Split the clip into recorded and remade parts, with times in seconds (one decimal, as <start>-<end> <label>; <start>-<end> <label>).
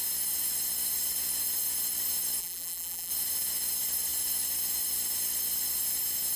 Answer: 0.0-2.4 recorded; 2.4-3.1 remade; 3.1-6.4 recorded